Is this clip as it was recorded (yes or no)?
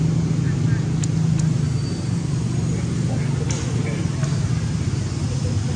yes